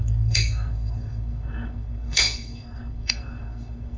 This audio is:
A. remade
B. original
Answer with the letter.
A